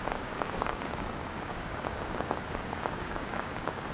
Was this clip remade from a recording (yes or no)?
yes